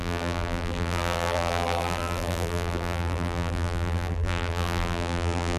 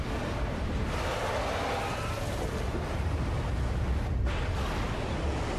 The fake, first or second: first